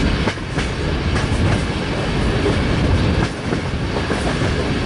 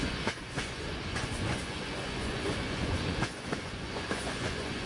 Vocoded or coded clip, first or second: second